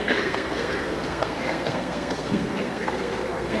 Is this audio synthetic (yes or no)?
yes